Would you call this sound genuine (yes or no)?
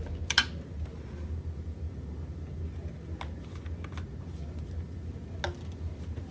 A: yes